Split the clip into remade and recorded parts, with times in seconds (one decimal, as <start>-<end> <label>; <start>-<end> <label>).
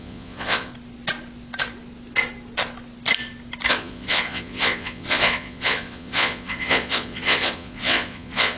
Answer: 0.0-0.7 remade; 0.7-3.7 recorded; 3.7-8.6 remade